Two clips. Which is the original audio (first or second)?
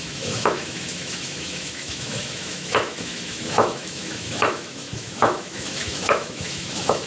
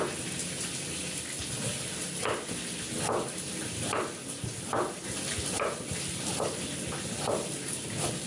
second